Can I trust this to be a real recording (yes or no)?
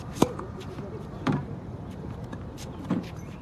no